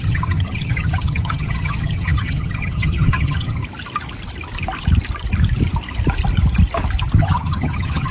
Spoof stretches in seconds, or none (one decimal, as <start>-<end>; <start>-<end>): 0.0-3.6; 7.2-8.1